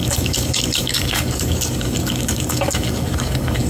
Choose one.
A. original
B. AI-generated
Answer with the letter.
B